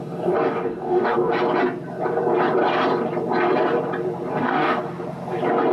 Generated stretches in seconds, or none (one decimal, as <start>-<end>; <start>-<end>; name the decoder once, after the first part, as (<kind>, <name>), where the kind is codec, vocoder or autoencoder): 0.0-1.3 (codec, DAC); 4.3-4.8